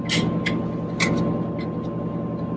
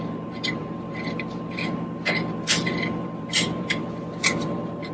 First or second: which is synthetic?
second